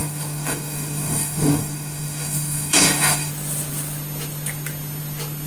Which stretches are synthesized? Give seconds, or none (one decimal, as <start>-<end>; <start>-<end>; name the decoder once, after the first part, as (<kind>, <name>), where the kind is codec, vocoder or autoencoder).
0.0-3.3 (codec, DAC)